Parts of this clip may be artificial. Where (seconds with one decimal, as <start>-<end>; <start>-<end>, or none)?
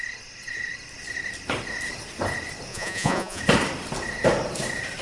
2.7-3.4